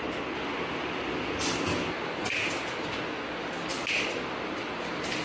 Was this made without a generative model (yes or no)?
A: yes